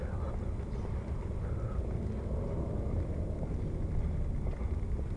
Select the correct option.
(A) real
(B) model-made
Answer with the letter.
A